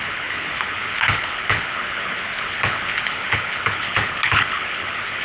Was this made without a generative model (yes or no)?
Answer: no